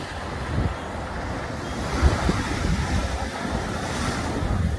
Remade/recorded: recorded